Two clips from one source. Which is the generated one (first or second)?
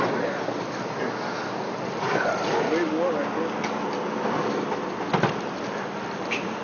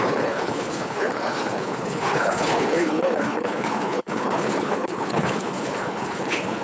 second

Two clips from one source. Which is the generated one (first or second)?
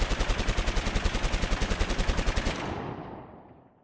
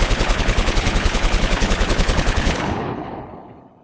second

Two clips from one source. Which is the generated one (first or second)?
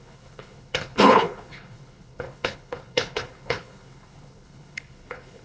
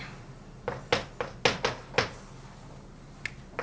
first